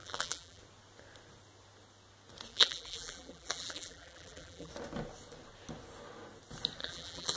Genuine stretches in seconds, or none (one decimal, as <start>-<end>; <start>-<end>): 0.6-2.5; 4.7-6.8